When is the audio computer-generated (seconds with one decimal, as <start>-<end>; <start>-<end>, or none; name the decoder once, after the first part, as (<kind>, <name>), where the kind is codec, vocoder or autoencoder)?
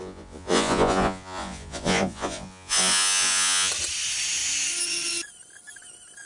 0.0-3.7 (vocoder, Vocos)